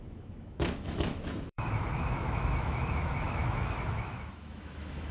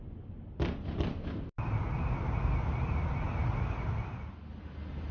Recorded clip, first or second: second